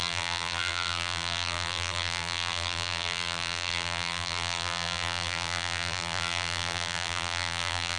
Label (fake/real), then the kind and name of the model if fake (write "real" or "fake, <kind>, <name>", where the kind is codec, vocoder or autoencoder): fake, vocoder, BigVGAN v2